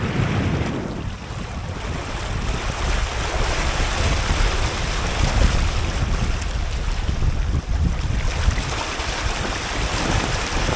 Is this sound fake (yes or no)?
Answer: no